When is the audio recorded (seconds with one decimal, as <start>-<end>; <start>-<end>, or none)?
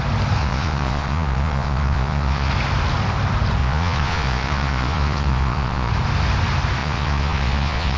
0.0-0.4; 2.5-3.6; 5.9-6.8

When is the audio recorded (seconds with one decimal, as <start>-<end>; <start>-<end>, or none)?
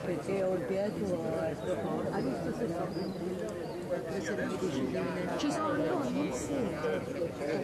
0.0-5.3; 6.8-7.6